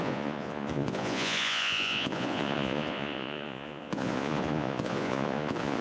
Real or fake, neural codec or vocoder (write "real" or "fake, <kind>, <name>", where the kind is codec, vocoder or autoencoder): fake, vocoder, Vocos